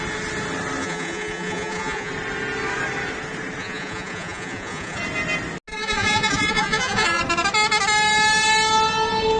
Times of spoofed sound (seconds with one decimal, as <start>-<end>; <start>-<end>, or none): 0.8-2.1; 3.6-5.0; 5.7-7.2